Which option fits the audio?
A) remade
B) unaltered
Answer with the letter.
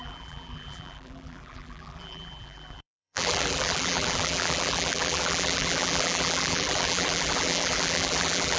A